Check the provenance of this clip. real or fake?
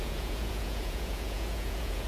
fake